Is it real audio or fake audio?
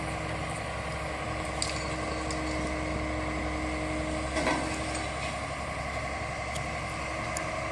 real